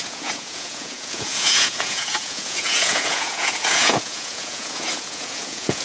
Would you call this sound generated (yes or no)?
yes